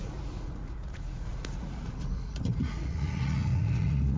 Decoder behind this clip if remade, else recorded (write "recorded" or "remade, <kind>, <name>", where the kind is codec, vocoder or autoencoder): remade, vocoder, Vocos